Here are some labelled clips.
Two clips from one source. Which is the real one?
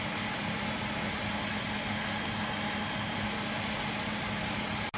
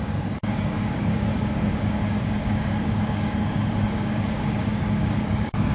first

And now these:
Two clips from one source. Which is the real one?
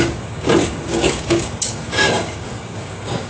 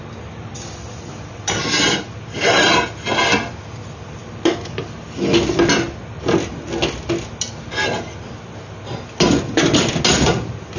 second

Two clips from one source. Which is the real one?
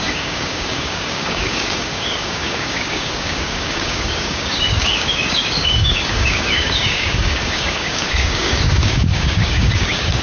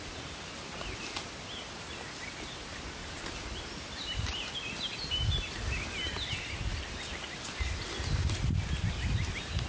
second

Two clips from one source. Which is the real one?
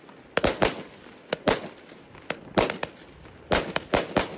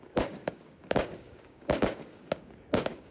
first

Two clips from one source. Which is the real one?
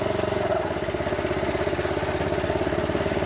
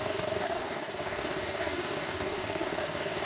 first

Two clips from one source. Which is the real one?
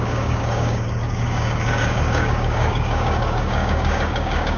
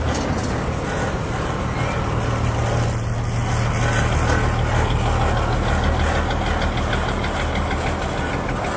second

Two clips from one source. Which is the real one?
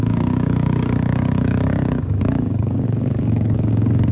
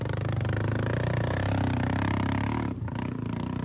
second